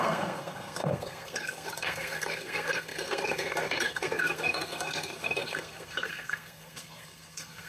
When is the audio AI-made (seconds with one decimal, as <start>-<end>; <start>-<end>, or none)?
0.0-7.7